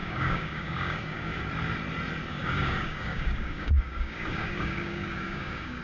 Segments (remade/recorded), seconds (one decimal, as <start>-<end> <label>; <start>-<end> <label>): 0.0-1.5 remade; 1.5-2.3 recorded; 2.3-5.8 remade